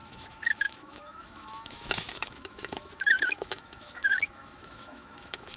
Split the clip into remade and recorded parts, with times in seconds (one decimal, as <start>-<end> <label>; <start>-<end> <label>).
0.0-5.6 remade